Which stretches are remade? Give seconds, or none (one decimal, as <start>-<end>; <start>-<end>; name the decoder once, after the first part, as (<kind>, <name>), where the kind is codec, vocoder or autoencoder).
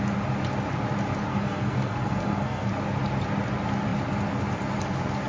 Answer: 1.3-2.7 (codec, SNAC)